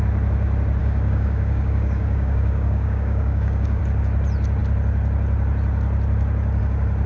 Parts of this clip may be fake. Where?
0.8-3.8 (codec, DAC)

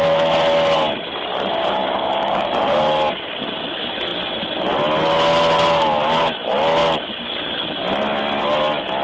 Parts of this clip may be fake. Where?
1.5-2.6 (codec, DAC)